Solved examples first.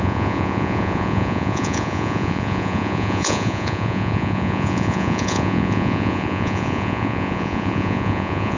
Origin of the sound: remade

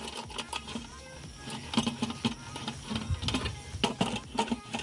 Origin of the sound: recorded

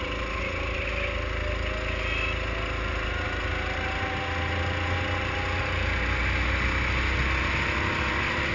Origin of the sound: recorded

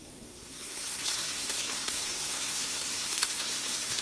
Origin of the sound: remade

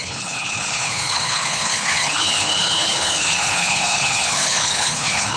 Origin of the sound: remade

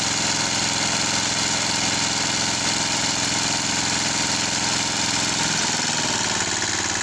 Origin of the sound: recorded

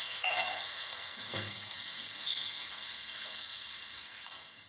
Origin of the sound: remade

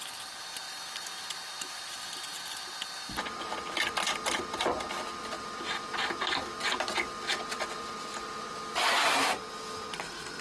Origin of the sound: recorded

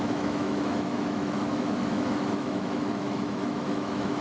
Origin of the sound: remade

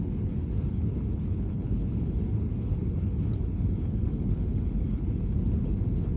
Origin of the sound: remade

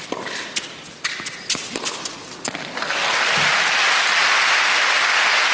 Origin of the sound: recorded